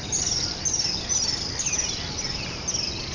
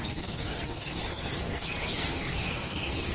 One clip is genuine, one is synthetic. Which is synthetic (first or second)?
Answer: second